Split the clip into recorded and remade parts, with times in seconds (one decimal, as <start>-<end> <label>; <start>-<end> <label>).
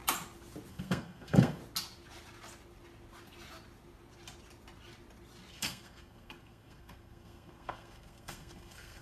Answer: 0.0-0.7 recorded; 0.7-1.6 remade; 1.6-5.5 recorded; 5.5-9.0 remade